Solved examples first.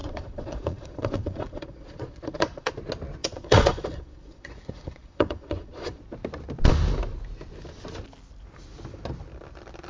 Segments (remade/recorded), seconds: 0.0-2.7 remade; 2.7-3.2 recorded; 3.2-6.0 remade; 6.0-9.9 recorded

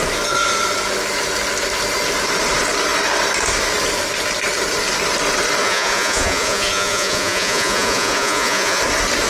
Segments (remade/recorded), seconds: 0.0-5.6 recorded; 5.6-8.8 remade; 8.8-9.3 recorded

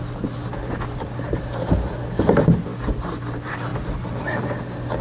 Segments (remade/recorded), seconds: 0.0-5.0 recorded

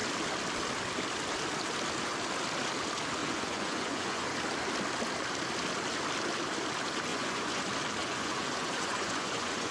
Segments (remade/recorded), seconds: 0.0-3.2 recorded; 3.2-4.3 remade; 4.3-7.1 recorded; 7.1-7.6 remade; 7.6-8.0 recorded; 8.0-9.7 remade

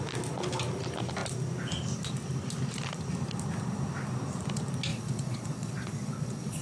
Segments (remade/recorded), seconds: 0.0-4.9 recorded; 4.9-6.6 remade

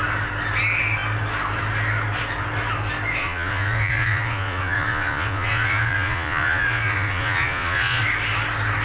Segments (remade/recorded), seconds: 0.0-3.2 recorded; 3.2-8.0 remade; 8.0-8.8 recorded